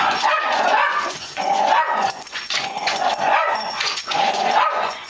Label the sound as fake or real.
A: fake